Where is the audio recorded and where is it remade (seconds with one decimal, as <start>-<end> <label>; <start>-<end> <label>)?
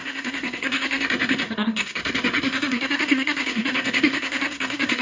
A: 0.0-5.0 remade